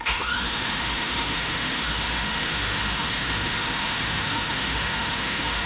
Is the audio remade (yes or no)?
yes